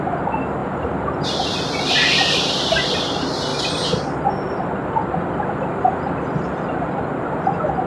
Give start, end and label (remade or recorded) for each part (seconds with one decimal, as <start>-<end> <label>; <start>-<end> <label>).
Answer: 0.0-0.6 recorded; 0.6-1.7 remade; 1.7-3.5 recorded; 3.5-7.0 remade; 7.0-7.9 recorded